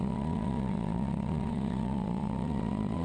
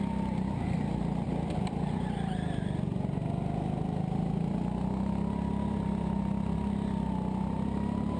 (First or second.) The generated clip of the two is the first